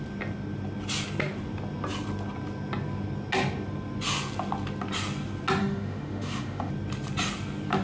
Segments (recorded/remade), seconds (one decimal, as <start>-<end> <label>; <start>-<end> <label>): 0.0-5.6 recorded; 5.6-6.7 remade; 6.7-7.8 recorded

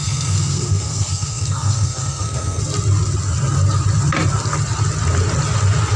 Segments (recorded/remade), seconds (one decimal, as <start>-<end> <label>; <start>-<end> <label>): 0.0-2.6 remade; 2.6-6.0 recorded

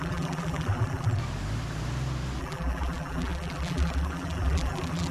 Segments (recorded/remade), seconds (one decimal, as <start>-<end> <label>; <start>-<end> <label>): 0.0-1.2 remade; 1.2-2.4 recorded; 2.4-5.1 remade

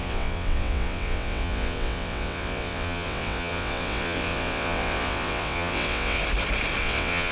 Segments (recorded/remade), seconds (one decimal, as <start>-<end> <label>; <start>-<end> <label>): 0.0-6.2 remade; 6.2-6.8 recorded; 6.8-7.3 remade

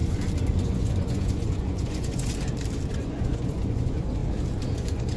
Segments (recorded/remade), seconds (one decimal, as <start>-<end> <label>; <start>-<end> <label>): 0.0-0.6 recorded; 0.6-2.3 remade; 2.3-2.9 recorded; 2.9-4.2 remade; 4.2-4.7 recorded; 4.7-5.2 remade

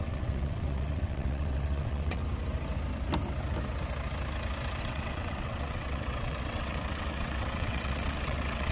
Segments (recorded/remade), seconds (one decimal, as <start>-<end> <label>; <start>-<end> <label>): 0.0-2.2 remade; 2.2-4.8 recorded; 4.8-8.7 remade

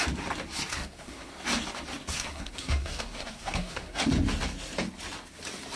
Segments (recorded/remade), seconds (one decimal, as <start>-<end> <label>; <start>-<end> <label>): 0.0-0.7 recorded; 0.7-1.3 remade; 1.3-2.1 recorded; 2.1-4.0 remade; 4.0-5.8 recorded

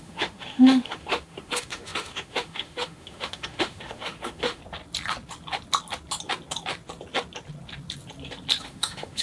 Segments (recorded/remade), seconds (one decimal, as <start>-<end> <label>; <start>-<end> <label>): 0.0-4.6 remade; 4.6-8.6 recorded; 8.6-9.2 remade